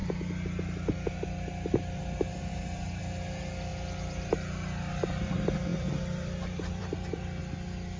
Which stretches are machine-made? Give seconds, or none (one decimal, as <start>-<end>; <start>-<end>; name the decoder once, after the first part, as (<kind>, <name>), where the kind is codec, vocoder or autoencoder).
5.7-7.4 (vocoder, BigVGAN v2)